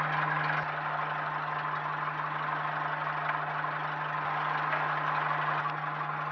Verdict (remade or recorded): recorded